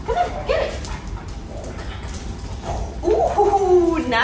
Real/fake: real